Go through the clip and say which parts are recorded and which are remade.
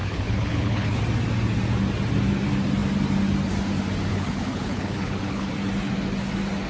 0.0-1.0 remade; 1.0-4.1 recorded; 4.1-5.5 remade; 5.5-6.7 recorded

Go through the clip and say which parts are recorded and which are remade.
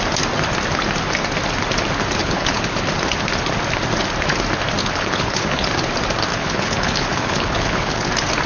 0.0-2.2 recorded; 2.2-2.8 remade; 2.8-4.8 recorded; 4.8-5.7 remade; 5.7-6.3 recorded; 6.3-8.1 remade; 8.1-8.5 recorded